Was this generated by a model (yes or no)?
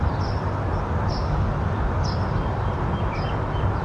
no